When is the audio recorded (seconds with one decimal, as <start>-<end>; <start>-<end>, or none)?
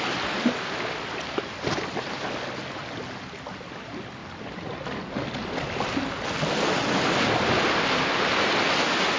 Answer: 0.0-9.2